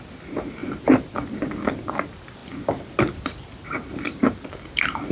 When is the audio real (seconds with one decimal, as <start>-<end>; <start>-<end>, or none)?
0.0-5.1